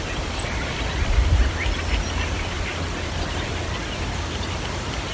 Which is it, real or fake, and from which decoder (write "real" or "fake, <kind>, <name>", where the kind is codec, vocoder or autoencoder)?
real